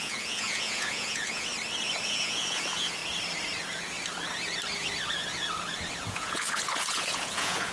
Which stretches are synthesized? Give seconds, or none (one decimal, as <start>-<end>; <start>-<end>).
0.0-1.5; 2.1-3.0; 6.1-7.7